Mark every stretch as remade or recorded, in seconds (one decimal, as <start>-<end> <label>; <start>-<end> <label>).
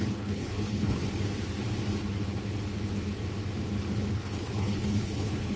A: 0.0-1.0 remade; 1.0-4.1 recorded; 4.1-5.6 remade